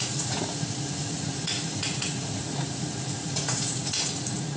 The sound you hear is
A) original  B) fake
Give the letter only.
B